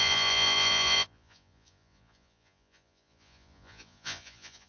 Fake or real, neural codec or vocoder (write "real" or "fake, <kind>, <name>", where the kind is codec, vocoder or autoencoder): fake, vocoder, Vocos